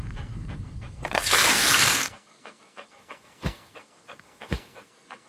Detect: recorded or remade remade